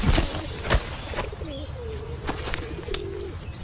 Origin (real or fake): real